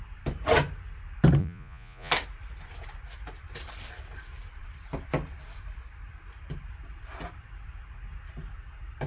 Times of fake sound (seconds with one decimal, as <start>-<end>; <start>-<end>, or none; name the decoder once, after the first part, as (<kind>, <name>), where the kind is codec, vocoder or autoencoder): 1.4-2.1 (vocoder, Vocos)